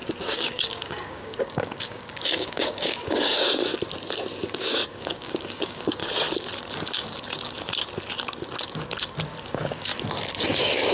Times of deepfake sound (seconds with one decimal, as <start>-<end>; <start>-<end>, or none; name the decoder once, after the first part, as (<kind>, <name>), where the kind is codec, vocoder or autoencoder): 0.0-3.7 (codec, DAC); 4.6-6.0; 9.4-9.9; 10.5-10.9